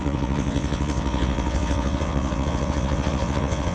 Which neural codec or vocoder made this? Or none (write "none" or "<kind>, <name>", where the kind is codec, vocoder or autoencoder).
vocoder, WaveNeXt